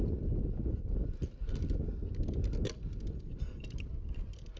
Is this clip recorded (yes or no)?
yes